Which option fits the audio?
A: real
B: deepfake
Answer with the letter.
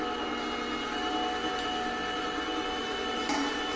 A